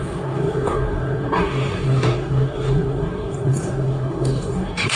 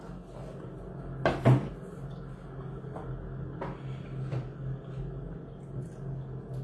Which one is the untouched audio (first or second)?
second